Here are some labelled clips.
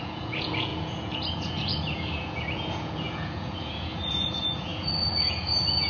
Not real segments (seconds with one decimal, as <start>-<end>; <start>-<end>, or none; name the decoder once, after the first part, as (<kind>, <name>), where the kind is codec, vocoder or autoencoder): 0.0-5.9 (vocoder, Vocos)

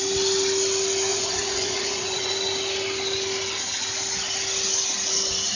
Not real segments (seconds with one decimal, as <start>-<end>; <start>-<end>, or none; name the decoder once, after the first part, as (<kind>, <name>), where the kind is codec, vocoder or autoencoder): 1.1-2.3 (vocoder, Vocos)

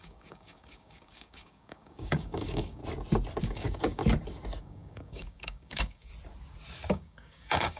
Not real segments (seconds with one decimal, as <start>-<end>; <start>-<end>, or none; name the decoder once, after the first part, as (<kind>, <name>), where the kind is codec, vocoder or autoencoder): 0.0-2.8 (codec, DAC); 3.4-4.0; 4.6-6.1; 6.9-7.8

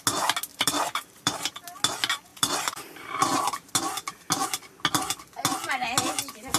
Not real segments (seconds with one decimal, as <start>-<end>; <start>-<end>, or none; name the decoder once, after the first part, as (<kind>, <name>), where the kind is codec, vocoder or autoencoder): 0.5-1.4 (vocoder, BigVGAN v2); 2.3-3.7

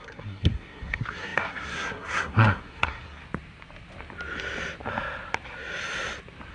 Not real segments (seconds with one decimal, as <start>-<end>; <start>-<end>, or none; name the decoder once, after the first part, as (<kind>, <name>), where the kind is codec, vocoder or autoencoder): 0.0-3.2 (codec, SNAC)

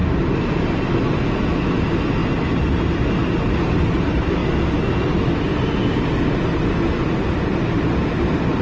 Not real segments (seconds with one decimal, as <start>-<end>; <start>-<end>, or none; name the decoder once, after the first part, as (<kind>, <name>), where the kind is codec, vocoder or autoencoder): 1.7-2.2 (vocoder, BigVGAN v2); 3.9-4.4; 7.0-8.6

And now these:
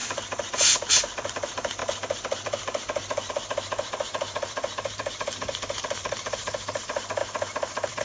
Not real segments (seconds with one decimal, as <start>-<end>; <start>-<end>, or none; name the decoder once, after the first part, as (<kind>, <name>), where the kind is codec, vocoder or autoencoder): 0.0-8.0 (vocoder, BigVGAN v2)

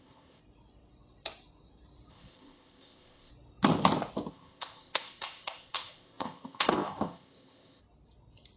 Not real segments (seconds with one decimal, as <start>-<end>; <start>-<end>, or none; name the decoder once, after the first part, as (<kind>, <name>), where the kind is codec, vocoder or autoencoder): 0.0-0.4 (codec, ZipCodec); 2.1-3.3; 4.3-7.8